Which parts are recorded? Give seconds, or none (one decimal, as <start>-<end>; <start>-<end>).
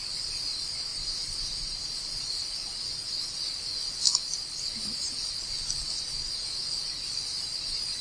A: 0.0-0.9; 2.4-4.1; 4.6-8.0